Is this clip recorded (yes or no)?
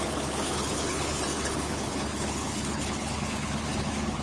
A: no